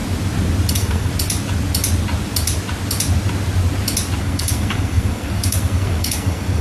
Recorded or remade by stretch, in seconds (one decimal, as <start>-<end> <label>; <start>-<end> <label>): 0.0-0.7 recorded; 0.7-1.1 remade; 1.1-4.2 recorded; 4.2-6.6 remade